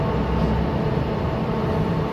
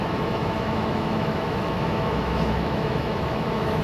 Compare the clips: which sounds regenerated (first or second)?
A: second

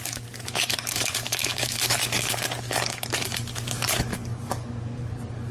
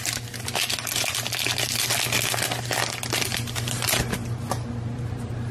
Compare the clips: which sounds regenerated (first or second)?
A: first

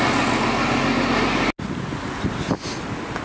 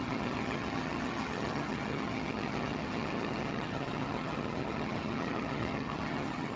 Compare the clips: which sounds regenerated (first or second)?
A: second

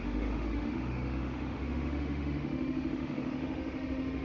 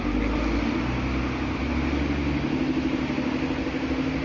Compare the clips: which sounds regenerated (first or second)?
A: first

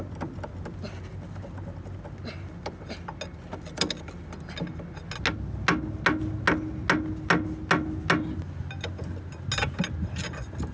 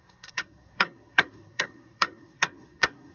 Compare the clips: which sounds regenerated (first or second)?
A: second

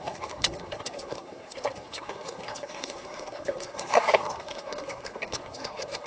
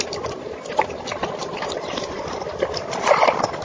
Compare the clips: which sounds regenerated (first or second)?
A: first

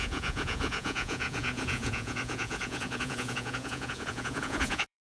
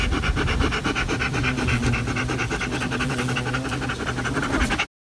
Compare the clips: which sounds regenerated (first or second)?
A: first